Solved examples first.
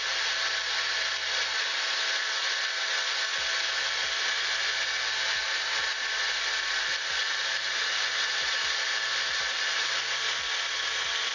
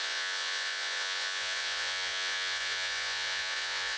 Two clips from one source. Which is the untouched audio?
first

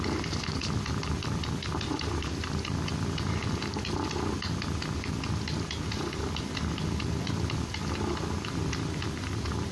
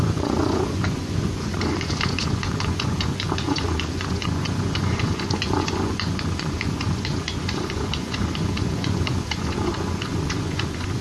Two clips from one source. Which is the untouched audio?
first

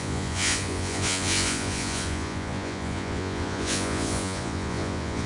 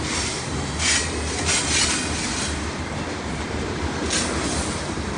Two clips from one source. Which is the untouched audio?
second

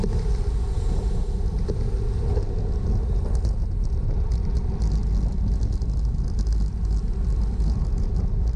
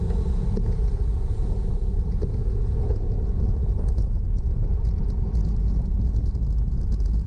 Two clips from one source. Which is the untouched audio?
first